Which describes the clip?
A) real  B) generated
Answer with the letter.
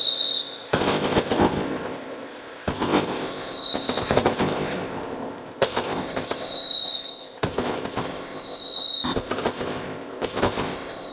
B